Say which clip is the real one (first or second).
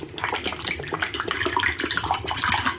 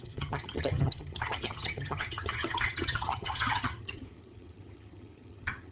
first